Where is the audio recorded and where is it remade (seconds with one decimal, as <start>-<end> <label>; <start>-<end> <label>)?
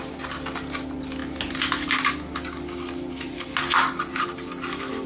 0.0-5.1 recorded